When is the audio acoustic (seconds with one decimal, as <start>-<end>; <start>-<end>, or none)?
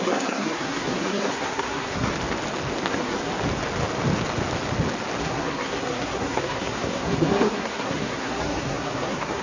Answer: 2.1-2.9; 3.3-5.2